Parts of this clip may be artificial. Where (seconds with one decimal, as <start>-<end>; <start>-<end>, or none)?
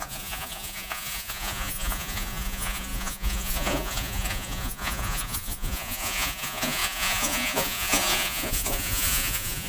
0.0-9.7